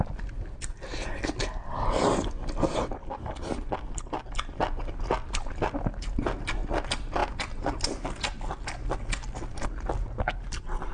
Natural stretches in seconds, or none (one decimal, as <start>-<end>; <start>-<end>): 0.0-10.9